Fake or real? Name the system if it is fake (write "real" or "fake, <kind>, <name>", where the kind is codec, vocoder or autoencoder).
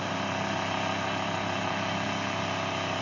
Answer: real